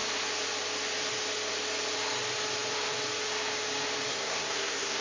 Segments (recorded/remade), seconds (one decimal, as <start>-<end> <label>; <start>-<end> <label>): 0.0-4.1 recorded; 4.1-5.0 remade